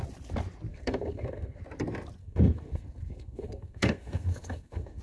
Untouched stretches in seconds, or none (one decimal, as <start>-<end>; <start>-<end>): 0.0-0.7; 1.6-2.2